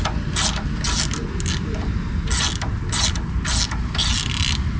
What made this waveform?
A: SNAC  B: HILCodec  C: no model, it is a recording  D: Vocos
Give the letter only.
C